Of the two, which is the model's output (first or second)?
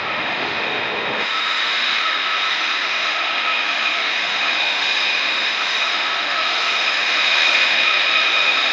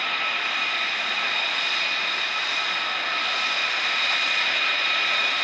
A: first